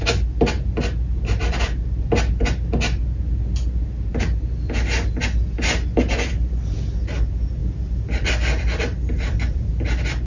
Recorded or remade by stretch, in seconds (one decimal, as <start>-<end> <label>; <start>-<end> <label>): 0.0-7.6 recorded; 7.6-9.7 remade; 9.7-10.3 recorded

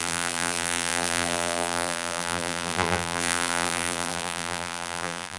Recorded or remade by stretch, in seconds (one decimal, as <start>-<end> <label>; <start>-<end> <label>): 0.0-5.4 remade

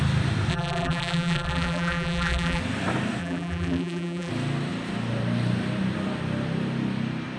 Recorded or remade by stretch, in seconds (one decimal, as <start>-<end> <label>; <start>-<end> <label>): 0.0-0.5 recorded; 0.5-2.6 remade; 2.6-3.2 recorded; 3.2-4.3 remade; 4.3-7.4 recorded

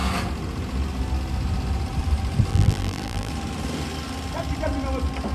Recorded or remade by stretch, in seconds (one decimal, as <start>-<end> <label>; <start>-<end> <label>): 0.0-2.5 recorded; 2.5-3.3 remade; 3.3-5.3 recorded

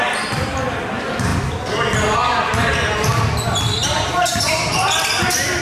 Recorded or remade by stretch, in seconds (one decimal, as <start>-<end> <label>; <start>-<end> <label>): 0.0-3.8 recorded; 3.8-4.7 remade; 4.7-5.6 recorded

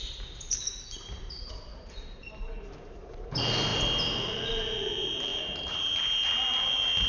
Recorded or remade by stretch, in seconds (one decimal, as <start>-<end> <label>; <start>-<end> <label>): 0.0-7.1 remade